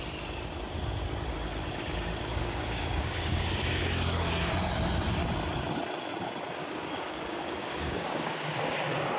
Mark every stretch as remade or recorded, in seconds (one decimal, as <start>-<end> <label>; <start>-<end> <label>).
0.0-2.3 recorded; 2.3-4.5 remade; 4.5-6.6 recorded; 6.6-8.3 remade; 8.3-9.2 recorded